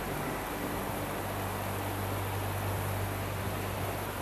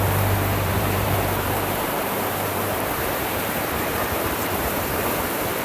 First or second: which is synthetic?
second